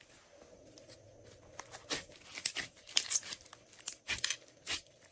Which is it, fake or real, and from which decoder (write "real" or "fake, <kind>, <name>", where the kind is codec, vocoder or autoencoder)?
real